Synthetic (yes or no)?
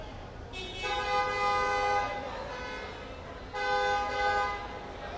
no